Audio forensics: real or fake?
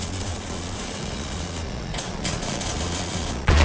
fake